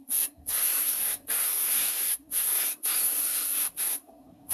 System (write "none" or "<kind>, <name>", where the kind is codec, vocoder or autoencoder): codec, SNAC